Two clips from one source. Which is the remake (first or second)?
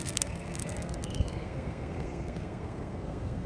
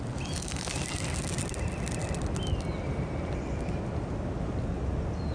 first